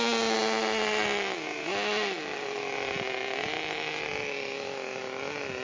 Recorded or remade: recorded